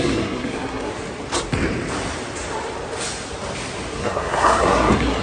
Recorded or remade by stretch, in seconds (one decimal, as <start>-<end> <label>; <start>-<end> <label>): 0.0-0.9 remade; 0.9-4.0 recorded; 4.0-5.2 remade